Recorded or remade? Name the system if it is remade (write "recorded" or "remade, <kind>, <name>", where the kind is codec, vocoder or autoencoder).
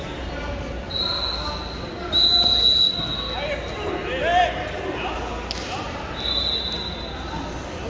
recorded